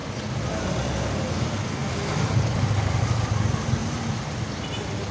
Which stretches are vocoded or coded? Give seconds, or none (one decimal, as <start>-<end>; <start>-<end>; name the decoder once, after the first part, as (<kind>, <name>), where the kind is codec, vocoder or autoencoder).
none